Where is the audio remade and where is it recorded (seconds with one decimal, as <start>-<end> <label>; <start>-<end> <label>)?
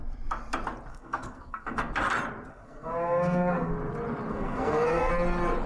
0.0-0.9 recorded; 0.9-1.9 remade; 1.9-2.5 recorded; 2.5-3.7 remade; 3.7-4.3 recorded; 4.3-5.1 remade; 5.1-5.7 recorded